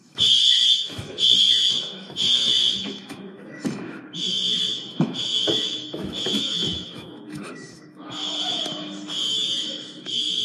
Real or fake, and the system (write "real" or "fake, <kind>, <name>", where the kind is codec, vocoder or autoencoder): fake, autoencoder, DAC-VAE